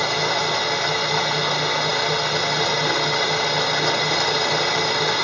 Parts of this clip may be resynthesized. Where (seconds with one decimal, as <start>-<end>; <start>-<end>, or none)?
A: none